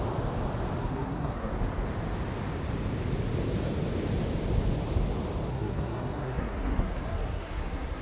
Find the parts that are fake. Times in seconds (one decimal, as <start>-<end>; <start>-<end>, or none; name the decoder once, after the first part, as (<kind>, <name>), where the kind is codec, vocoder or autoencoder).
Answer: 0.8-1.5 (codec, SNAC); 5.5-8.0